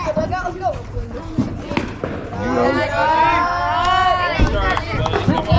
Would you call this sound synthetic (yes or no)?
no